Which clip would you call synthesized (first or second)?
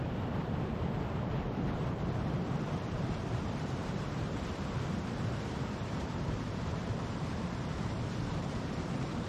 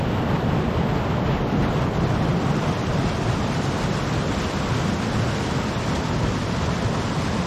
first